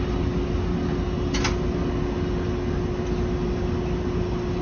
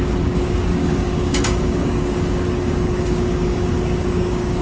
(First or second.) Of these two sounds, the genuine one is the first